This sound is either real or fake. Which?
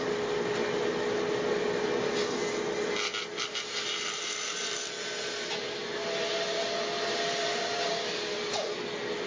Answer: real